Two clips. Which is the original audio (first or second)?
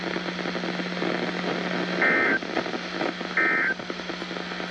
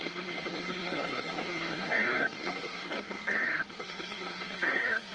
first